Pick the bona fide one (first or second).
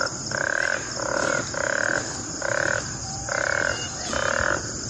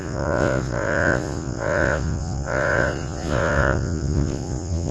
first